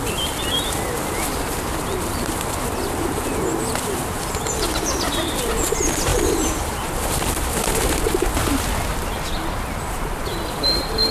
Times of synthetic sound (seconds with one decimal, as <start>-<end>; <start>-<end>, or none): none